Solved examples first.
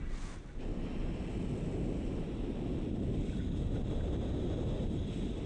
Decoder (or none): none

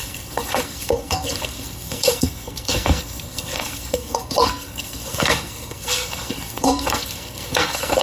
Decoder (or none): codec, SNAC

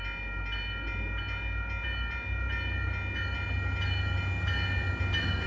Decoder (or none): none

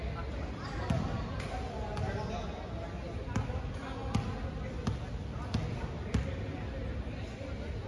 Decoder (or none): none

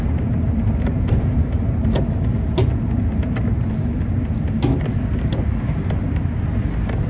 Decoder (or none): none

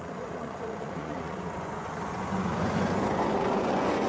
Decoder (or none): vocoder, Vocos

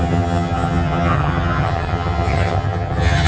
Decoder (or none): vocoder, HiFi-GAN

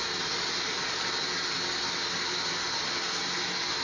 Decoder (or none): none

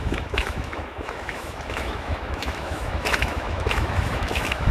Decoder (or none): autoencoder, DAC-VAE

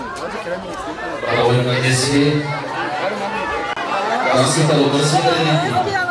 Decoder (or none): none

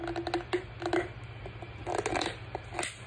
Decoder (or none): none